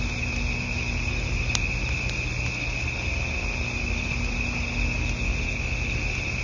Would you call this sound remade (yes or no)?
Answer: no